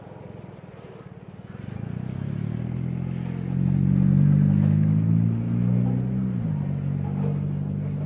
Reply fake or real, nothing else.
real